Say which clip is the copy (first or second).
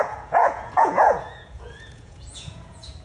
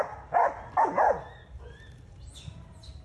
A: first